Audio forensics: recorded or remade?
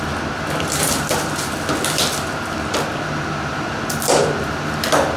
recorded